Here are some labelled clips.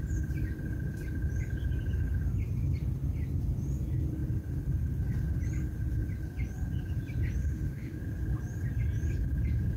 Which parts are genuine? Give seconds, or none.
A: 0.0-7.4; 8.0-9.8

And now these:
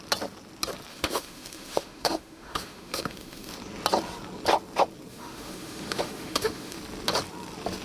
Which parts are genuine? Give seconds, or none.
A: 0.0-0.9; 3.5-5.1; 6.8-7.8

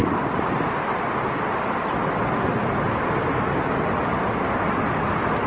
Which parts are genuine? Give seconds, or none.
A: 0.0-5.5

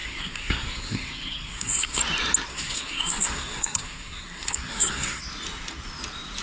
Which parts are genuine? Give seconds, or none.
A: 2.0-2.5; 5.2-6.4